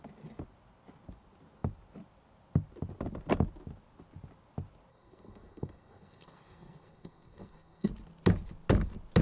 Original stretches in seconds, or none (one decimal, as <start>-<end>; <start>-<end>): 0.0-4.9; 7.9-9.2